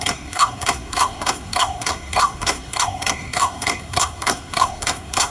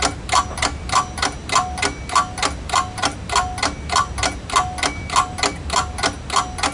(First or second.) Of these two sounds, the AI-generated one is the first